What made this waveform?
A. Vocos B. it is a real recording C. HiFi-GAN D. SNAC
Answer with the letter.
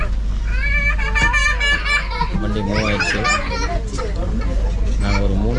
B